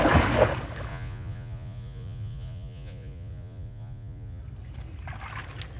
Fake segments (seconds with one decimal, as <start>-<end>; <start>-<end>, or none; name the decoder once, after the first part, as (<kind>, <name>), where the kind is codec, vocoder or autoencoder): 0.9-4.4 (vocoder, Vocos)

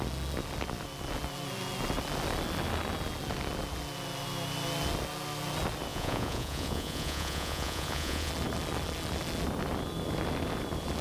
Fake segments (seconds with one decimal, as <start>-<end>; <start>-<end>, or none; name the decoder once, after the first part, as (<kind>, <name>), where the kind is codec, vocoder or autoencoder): 5.9-8.3 (vocoder, Vocos)

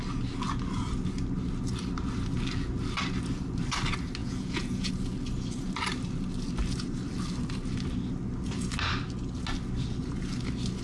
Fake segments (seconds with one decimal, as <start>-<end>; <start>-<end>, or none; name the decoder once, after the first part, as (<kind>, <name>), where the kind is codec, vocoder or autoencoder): 4.2-4.9 (vocoder, Vocos)